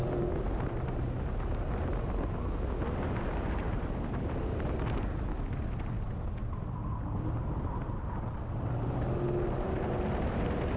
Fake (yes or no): no